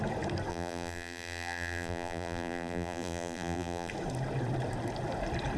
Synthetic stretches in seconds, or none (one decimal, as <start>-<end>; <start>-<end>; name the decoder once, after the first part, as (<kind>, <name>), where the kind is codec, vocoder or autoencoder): 0.5-3.9 (vocoder, BigVGAN v2)